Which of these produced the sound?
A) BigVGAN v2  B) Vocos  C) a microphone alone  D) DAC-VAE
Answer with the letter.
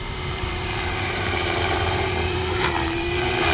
A